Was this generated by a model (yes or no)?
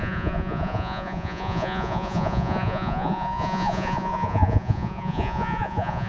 yes